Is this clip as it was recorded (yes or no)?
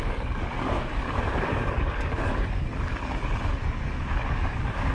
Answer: no